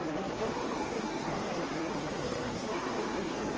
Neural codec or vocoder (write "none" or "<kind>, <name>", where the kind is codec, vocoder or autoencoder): codec, SNAC